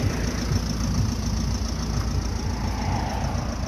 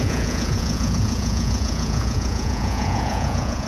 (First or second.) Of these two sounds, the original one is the first